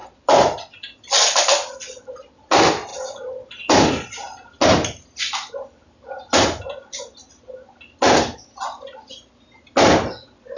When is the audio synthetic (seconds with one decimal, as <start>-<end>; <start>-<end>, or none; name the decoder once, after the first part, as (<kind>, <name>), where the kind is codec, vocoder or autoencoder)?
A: none